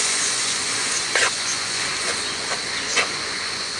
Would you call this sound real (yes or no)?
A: no